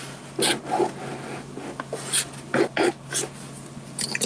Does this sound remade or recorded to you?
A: recorded